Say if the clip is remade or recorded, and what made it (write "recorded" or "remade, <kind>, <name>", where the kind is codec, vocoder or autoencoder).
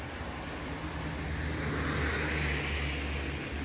recorded